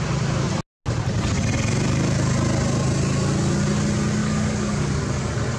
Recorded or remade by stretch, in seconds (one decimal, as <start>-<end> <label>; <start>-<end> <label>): 0.0-4.2 recorded; 4.2-5.0 remade; 5.0-5.6 recorded